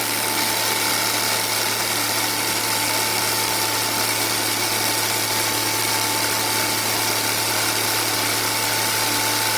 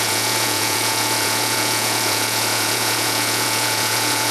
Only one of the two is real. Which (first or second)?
first